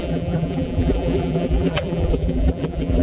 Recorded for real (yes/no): no